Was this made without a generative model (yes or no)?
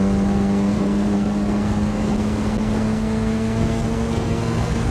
no